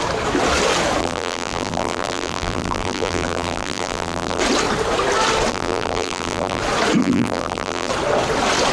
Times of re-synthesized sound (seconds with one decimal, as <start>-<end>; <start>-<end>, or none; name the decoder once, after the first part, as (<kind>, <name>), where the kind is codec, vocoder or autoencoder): 1.0-4.4 (vocoder, BigVGAN v2); 5.5-6.6; 7.0-7.9